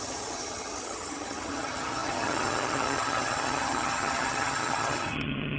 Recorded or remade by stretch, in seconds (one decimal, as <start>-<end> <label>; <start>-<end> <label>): 0.0-5.6 remade